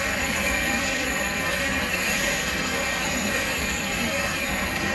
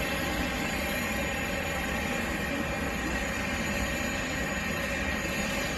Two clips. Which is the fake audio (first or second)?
first